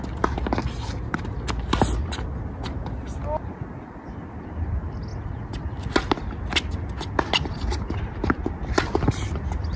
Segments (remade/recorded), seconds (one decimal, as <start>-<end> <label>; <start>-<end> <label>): 0.0-9.8 recorded